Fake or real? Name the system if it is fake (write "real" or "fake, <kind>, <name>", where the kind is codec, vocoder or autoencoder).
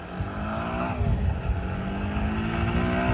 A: real